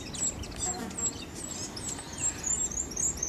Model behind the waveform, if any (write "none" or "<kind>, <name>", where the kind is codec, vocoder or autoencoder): none